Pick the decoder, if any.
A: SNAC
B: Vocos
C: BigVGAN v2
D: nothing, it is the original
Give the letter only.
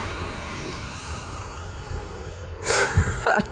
A